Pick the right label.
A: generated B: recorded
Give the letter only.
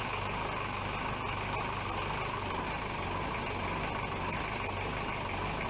B